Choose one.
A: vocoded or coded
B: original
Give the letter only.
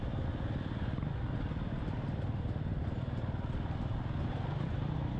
B